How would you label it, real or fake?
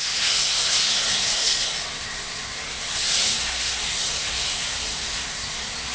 fake